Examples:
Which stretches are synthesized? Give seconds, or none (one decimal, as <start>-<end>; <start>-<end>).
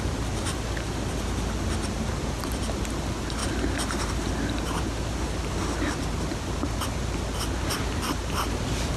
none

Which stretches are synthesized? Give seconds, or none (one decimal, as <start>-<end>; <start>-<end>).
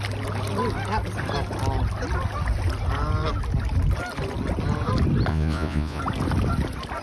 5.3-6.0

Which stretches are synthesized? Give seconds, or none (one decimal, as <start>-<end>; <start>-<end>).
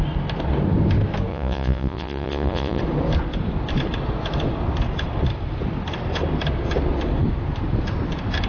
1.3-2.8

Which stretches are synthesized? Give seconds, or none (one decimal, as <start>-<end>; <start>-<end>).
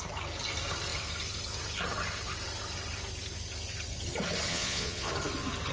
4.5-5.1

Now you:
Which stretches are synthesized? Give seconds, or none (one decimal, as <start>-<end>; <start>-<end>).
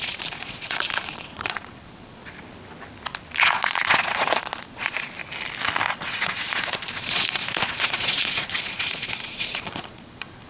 0.0-2.2; 3.4-5.2; 5.9-10.5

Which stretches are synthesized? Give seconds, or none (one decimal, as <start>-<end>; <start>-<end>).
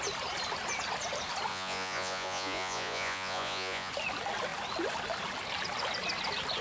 1.5-3.9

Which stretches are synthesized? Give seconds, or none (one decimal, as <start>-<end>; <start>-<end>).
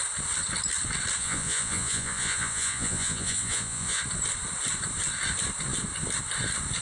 1.2-4.0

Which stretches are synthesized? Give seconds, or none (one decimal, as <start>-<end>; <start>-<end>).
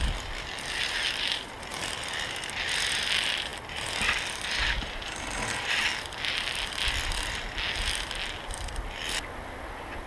none